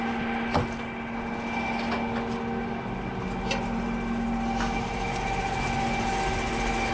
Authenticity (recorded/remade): recorded